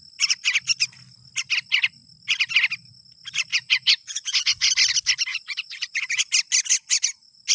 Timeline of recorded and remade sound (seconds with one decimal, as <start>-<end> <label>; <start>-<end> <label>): 0.0-3.5 recorded; 3.5-4.7 remade; 4.7-5.3 recorded; 5.3-6.2 remade; 6.2-7.5 recorded